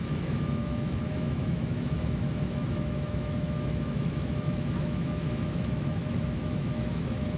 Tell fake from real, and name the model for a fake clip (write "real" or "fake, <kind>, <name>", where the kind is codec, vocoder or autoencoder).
fake, autoencoder, DAC-VAE